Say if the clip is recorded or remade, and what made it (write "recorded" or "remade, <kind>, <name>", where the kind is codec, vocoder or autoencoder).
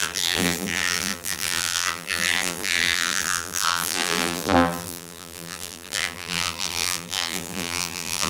remade, vocoder, BigVGAN v2